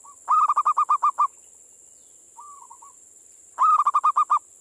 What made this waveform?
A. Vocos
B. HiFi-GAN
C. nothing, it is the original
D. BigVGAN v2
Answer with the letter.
C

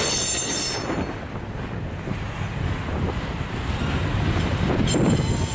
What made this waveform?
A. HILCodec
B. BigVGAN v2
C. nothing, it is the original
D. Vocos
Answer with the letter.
C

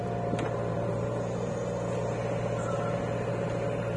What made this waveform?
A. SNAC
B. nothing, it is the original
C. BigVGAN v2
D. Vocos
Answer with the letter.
B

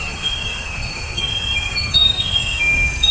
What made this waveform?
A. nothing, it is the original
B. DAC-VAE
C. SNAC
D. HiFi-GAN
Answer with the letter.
C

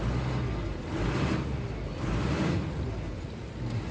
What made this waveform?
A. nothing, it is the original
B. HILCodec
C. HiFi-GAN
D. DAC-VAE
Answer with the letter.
A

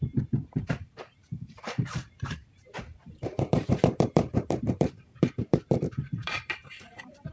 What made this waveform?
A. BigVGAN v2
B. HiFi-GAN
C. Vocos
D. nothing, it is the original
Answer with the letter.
A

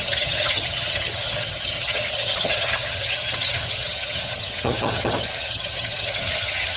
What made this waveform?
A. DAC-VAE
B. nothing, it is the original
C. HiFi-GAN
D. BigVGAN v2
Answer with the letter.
C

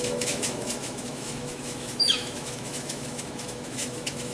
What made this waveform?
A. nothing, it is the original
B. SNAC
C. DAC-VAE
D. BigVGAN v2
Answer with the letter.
C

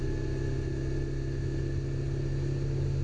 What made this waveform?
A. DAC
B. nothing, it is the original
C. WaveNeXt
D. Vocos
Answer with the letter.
B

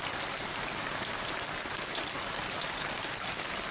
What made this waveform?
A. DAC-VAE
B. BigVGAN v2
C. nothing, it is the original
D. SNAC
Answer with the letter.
C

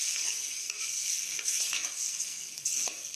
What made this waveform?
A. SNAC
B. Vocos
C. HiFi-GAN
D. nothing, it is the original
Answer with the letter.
A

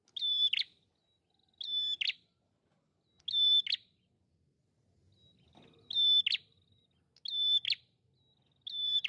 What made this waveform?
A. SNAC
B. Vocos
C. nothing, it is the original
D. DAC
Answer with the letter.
C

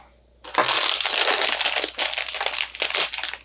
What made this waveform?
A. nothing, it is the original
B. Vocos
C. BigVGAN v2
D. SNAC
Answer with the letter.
A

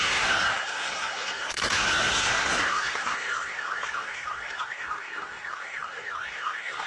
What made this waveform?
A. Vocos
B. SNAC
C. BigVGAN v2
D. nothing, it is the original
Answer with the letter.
B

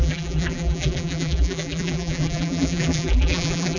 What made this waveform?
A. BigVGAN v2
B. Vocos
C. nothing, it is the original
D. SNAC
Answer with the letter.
A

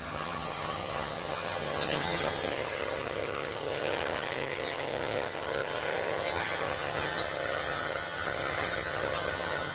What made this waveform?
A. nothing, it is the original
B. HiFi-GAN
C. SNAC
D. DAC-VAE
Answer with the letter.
B